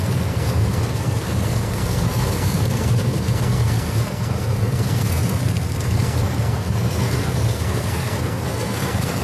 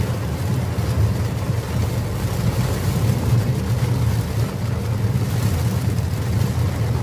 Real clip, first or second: second